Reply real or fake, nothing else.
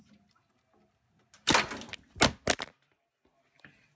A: real